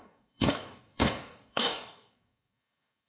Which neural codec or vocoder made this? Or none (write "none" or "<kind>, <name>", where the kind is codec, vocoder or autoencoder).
codec, DAC